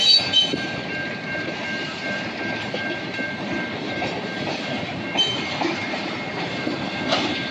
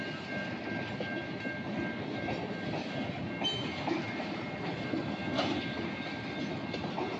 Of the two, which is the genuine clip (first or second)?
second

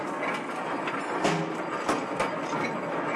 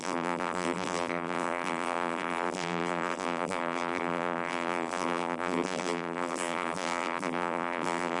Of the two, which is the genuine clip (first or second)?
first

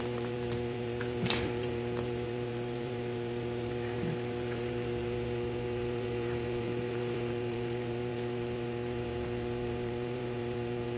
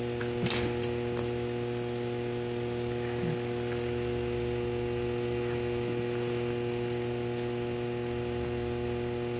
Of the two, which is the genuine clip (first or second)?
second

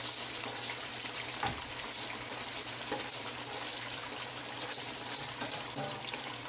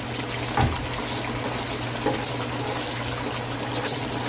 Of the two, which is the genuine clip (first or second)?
second